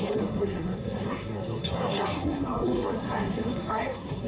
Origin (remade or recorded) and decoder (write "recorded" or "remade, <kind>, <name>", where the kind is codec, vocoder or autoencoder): remade, codec, SNAC